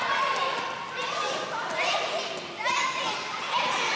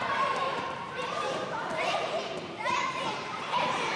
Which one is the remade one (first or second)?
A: second